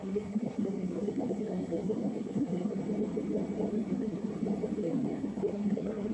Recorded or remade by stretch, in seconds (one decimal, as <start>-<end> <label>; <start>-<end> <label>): 0.0-2.8 remade; 2.8-3.7 recorded; 3.7-4.3 remade; 4.3-4.8 recorded; 4.8-6.1 remade